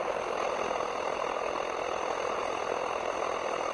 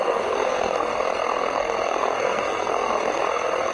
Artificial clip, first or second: second